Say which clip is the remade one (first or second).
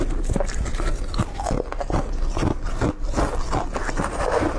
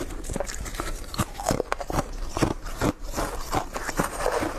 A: second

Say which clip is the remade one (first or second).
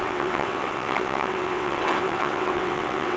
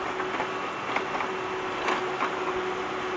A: first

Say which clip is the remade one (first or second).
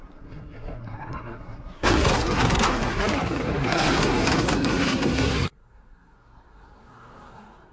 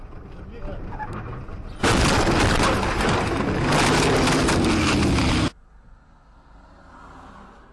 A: first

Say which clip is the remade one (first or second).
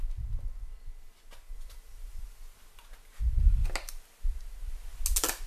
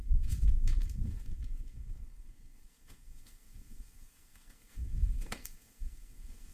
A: second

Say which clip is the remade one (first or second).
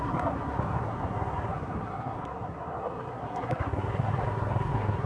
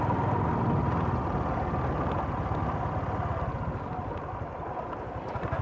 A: first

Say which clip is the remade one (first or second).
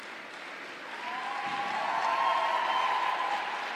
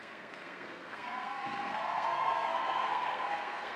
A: second